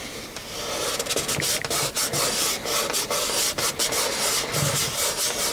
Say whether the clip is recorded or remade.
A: recorded